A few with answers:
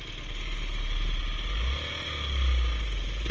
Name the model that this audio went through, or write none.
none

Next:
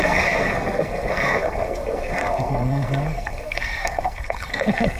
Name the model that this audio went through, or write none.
codec, SNAC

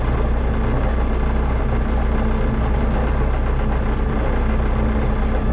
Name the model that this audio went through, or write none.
none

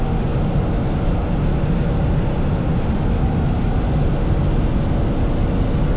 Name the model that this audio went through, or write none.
none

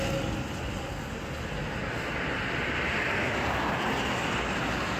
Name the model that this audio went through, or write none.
none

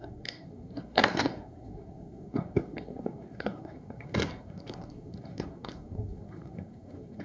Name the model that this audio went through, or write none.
codec, SNAC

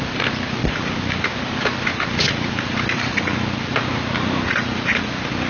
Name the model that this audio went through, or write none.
none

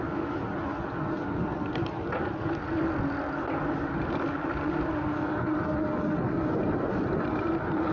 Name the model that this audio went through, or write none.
none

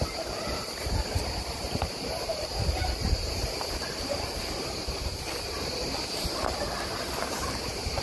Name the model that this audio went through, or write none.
vocoder, BigVGAN v2